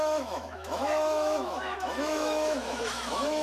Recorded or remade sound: remade